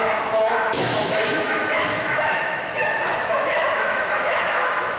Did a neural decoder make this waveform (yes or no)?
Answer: yes